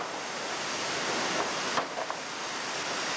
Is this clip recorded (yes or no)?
yes